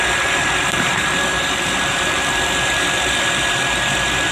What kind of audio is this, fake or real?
fake